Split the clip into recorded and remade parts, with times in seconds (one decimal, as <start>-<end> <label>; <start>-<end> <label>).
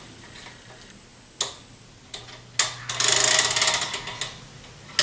0.0-5.0 recorded